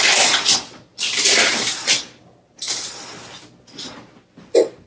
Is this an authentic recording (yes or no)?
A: yes